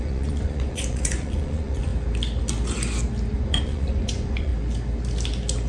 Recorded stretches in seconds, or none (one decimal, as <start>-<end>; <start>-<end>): 1.9-3.3; 4.5-5.7